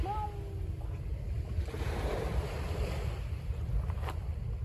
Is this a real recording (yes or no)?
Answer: yes